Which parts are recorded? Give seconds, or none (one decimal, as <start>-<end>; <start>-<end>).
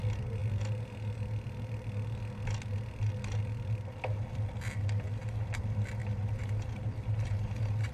0.0-7.9